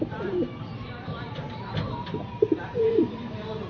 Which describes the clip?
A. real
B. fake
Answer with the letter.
A